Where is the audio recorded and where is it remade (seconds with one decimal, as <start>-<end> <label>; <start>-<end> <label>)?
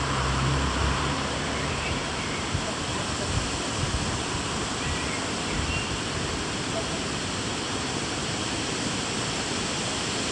0.0-2.9 remade; 2.9-6.6 recorded; 6.6-10.3 remade